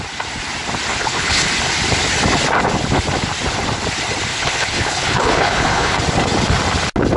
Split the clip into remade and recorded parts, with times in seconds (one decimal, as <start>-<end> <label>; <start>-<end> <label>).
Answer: 0.0-0.9 recorded; 0.9-1.5 remade; 1.5-4.3 recorded; 4.3-6.0 remade; 6.0-7.2 recorded